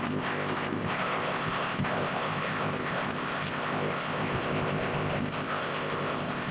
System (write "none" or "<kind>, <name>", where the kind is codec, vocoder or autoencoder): codec, ZipCodec